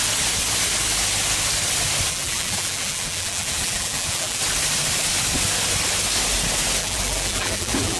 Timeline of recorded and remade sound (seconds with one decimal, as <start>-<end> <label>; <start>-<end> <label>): 0.0-2.1 recorded; 2.1-4.4 remade; 4.4-6.8 recorded; 6.8-8.0 remade